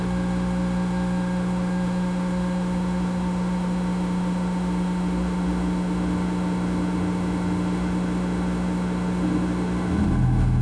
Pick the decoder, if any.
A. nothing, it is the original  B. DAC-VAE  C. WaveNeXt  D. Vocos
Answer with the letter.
B